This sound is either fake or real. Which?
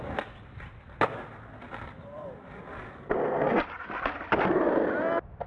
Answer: real